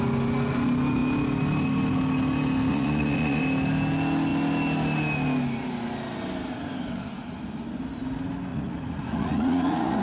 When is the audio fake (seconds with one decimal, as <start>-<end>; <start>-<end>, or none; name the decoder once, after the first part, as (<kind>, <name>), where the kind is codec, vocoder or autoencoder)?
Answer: 2.7-3.4 (vocoder, Vocos); 8.5-10.0